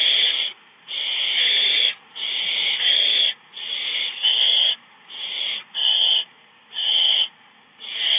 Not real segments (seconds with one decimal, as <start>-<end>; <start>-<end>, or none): 0.0-1.1; 1.8-8.2